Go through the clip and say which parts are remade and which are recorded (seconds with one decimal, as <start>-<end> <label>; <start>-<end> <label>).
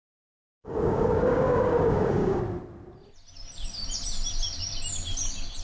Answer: 0.0-2.4 remade; 2.4-5.6 recorded